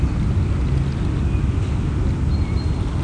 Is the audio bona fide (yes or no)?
yes